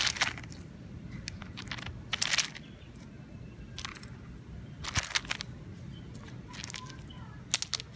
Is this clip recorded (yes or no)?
yes